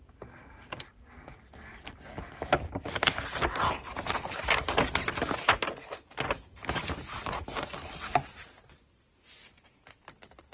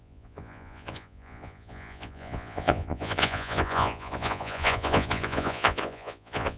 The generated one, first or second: second